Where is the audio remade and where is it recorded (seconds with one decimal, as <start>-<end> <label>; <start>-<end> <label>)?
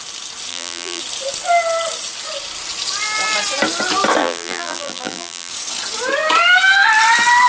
0.0-0.5 recorded; 0.5-1.0 remade; 1.0-4.2 recorded; 4.2-5.5 remade; 5.5-7.5 recorded